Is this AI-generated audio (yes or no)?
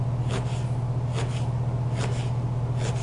no